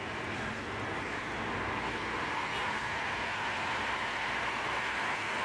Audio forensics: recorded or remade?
recorded